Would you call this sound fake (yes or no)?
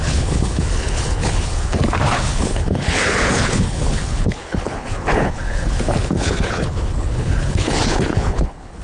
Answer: yes